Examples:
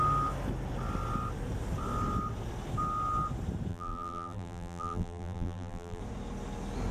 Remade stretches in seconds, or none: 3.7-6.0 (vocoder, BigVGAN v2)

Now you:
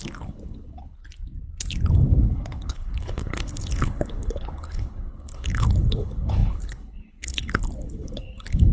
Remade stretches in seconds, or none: 0.0-1.0 (codec, HILCodec); 1.9-8.7

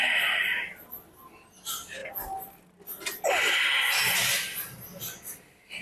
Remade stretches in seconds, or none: none